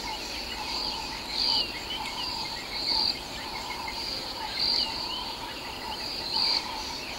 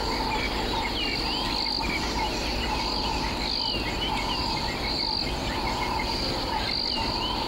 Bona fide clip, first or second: second